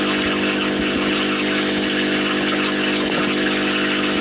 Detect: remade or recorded recorded